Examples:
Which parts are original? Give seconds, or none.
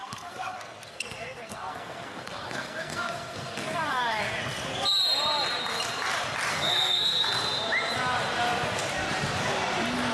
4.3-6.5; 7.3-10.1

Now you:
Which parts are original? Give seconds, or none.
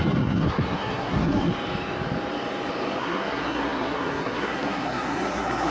1.5-3.0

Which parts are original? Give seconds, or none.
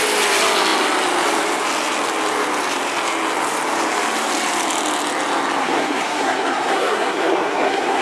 0.0-5.6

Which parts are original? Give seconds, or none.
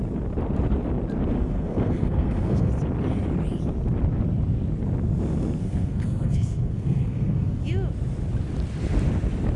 0.0-1.4; 2.7-5.6; 7.6-9.6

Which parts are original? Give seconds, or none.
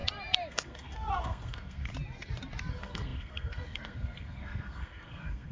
0.0-0.5; 1.9-2.7